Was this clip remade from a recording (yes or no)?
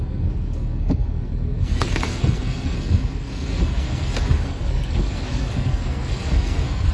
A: yes